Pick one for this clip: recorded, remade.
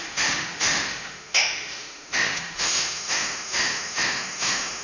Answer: remade